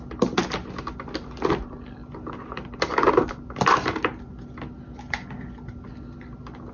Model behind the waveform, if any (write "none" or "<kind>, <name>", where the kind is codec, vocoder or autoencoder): none